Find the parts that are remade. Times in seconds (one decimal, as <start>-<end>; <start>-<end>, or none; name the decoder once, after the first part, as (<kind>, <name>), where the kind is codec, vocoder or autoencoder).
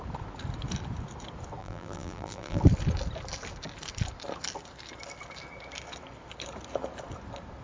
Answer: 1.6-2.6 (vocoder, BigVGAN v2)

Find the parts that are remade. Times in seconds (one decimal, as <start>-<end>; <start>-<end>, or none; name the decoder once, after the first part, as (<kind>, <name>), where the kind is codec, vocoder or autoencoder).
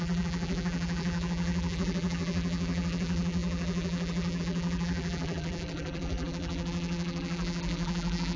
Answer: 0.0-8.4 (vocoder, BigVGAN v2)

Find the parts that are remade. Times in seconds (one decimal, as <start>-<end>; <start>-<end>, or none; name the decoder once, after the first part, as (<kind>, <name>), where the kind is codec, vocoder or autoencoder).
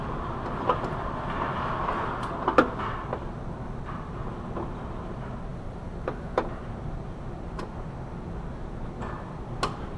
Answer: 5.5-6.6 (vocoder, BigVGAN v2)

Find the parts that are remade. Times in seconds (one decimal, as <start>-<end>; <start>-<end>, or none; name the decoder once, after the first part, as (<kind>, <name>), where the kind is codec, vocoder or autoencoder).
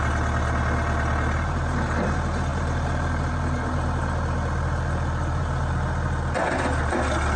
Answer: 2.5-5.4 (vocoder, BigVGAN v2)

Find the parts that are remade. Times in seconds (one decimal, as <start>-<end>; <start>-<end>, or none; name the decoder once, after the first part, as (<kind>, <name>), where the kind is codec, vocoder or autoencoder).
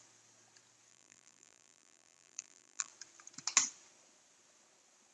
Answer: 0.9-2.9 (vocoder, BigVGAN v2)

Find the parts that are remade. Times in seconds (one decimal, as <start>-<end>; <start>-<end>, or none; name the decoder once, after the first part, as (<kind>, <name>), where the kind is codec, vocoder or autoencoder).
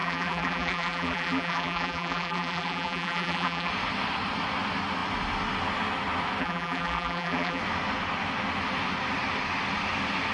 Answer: 0.0-3.7 (vocoder, BigVGAN v2); 6.4-7.6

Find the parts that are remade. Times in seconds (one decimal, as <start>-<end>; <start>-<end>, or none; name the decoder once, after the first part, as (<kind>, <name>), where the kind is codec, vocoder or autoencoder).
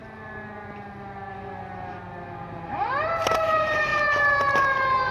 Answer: 3.0-3.9 (vocoder, BigVGAN v2); 4.6-5.1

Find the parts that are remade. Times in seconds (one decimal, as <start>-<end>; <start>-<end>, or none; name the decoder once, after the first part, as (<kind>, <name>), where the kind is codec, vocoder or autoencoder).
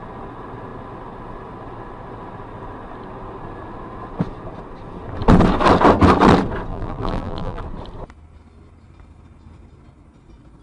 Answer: 6.7-7.6 (vocoder, BigVGAN v2)